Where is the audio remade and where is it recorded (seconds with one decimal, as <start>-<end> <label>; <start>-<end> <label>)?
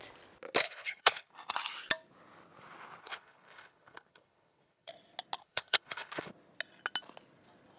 0.0-0.6 recorded; 0.6-1.3 remade; 1.3-3.0 recorded; 3.0-4.9 remade; 4.9-5.4 recorded; 5.4-6.3 remade; 6.3-7.8 recorded